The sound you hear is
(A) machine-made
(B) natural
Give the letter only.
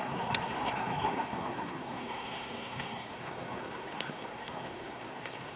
A